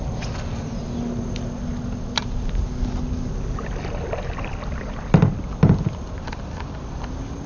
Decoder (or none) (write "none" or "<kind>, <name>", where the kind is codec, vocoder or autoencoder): none